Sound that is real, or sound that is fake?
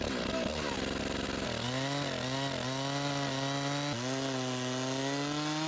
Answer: real